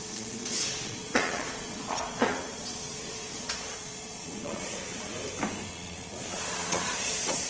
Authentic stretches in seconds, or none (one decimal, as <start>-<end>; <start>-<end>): 5.1-5.7